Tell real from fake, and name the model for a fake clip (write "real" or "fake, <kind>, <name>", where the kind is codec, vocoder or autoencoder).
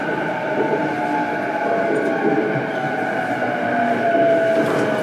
real